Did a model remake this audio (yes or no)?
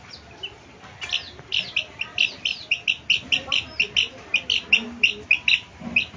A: no